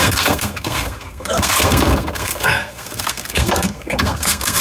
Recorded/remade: remade